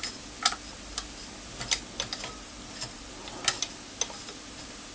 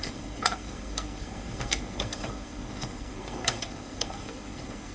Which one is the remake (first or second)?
second